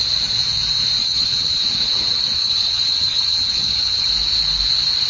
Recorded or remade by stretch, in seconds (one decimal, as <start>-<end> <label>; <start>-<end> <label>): 0.0-1.0 recorded; 1.0-1.6 remade; 1.6-2.4 recorded; 2.4-4.1 remade; 4.1-5.1 recorded